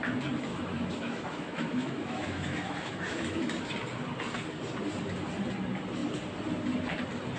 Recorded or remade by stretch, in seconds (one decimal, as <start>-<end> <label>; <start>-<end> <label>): 0.0-0.5 recorded; 0.5-3.7 remade; 3.7-7.4 recorded